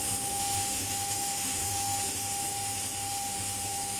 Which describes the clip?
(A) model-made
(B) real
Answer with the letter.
A